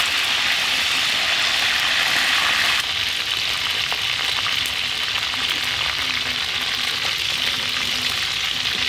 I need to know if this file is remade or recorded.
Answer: recorded